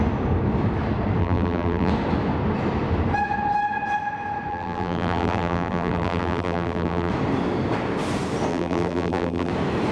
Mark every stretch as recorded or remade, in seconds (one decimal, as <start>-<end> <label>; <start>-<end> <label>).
0.0-1.2 recorded; 1.2-1.9 remade; 1.9-4.5 recorded; 4.5-7.1 remade; 7.1-8.5 recorded; 8.5-9.5 remade; 9.5-9.9 recorded